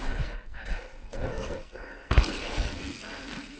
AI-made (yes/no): yes